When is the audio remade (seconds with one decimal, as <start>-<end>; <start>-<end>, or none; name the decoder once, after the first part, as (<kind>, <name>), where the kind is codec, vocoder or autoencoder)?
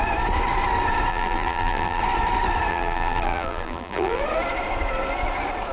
1.1-2.0 (vocoder, BigVGAN v2); 2.7-4.2